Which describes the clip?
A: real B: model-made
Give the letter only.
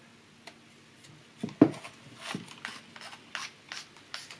A